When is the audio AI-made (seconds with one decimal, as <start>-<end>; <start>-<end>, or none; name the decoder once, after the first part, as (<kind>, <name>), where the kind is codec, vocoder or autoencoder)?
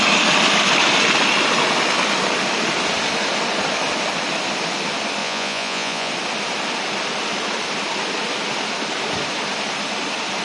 5.2-6.1 (vocoder, Vocos)